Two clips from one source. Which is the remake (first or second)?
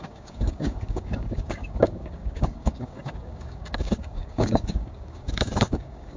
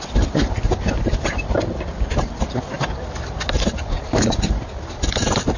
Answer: first